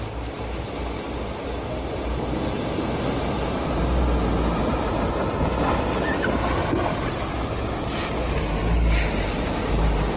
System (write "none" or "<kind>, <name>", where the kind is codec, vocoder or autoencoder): none